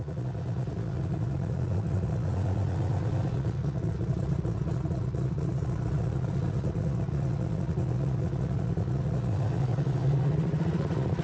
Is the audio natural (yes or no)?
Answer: no